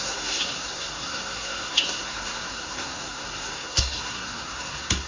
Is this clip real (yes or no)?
no